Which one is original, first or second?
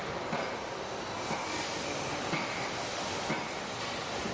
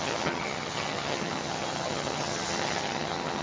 first